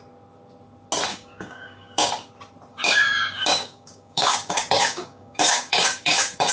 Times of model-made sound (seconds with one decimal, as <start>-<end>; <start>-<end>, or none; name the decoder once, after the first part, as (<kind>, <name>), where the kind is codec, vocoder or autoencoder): 1.1-2.1 (codec, DAC); 2.7-6.5